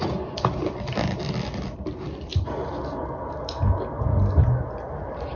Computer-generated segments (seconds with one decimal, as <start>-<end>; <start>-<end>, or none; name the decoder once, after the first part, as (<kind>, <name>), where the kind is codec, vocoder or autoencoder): none